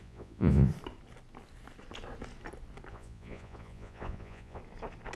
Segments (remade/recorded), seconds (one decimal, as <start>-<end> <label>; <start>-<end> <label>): 0.0-0.7 remade; 0.7-2.9 recorded; 2.9-4.6 remade; 4.6-5.2 recorded